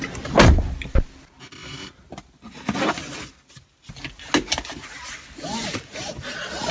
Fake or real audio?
real